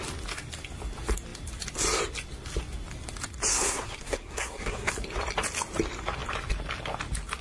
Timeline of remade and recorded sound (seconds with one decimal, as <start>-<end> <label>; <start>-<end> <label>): 0.0-3.5 recorded; 3.5-4.9 remade; 4.9-7.4 recorded